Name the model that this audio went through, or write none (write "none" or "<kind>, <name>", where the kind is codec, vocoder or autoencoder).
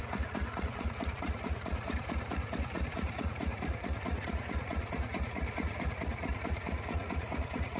vocoder, Vocos